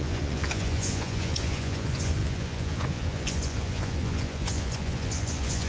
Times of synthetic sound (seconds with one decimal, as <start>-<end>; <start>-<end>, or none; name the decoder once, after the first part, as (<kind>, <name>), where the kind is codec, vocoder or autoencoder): 0.0-5.7 (vocoder, Vocos)